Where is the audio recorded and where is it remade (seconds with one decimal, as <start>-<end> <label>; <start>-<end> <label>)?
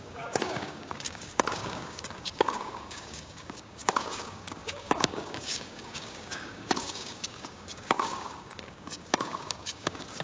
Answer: 0.0-10.2 remade